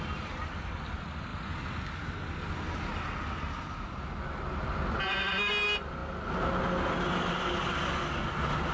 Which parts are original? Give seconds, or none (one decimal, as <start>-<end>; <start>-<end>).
0.0-8.7